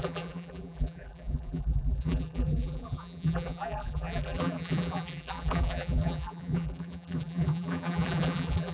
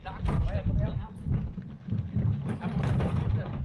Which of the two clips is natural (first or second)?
second